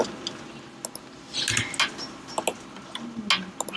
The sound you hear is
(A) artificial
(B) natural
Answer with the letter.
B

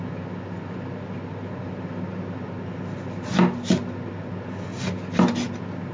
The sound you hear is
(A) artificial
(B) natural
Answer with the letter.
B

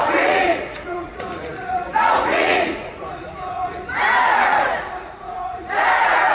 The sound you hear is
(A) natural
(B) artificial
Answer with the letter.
B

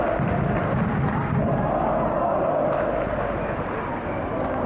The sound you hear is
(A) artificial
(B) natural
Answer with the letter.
B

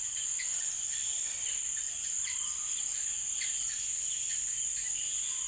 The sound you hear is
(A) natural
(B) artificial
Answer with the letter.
A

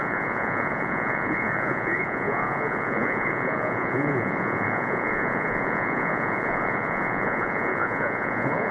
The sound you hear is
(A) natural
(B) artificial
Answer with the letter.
B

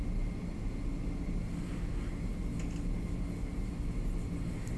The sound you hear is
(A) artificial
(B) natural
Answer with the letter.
B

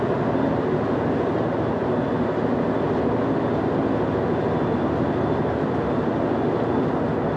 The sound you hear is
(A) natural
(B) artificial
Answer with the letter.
A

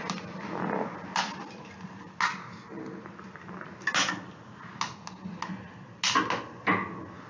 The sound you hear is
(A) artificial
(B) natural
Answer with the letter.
B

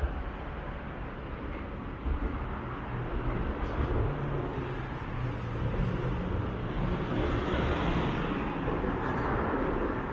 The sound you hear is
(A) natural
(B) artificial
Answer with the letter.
A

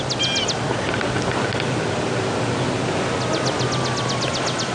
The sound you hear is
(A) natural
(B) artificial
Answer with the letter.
A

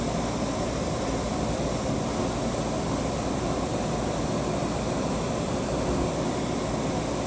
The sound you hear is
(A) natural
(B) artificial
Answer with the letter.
A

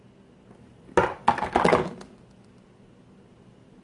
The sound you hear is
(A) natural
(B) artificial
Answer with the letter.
A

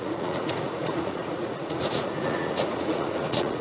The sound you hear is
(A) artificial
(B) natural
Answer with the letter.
A